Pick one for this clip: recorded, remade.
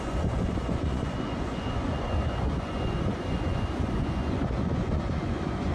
remade